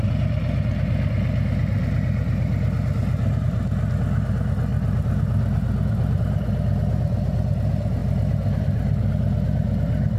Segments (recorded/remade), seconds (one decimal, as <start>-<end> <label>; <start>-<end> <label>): 0.0-10.2 recorded